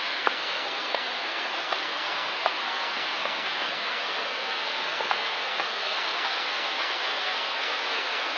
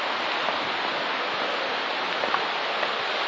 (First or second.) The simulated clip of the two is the first